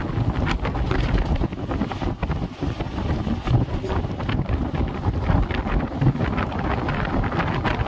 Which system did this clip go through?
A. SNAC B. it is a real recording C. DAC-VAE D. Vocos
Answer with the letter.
B